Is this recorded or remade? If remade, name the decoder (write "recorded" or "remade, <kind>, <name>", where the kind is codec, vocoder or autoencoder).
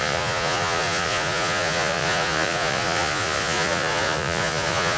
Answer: remade, vocoder, Vocos